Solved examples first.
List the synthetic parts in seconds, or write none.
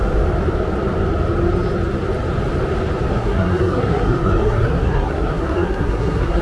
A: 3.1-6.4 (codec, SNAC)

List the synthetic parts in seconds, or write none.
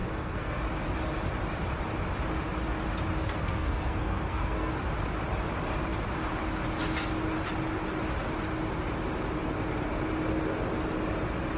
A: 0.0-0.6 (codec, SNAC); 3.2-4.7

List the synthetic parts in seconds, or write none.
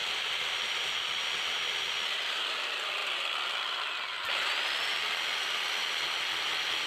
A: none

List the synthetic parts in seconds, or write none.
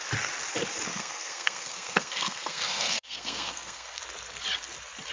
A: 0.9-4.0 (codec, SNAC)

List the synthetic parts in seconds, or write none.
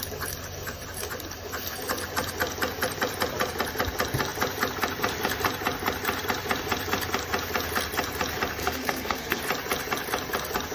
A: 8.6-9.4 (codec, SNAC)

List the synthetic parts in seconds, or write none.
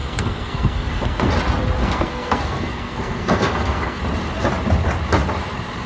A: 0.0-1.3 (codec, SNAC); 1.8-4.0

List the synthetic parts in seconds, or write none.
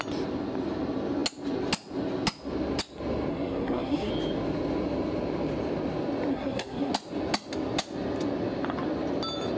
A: 3.3-4.1 (codec, SNAC); 6.3-6.9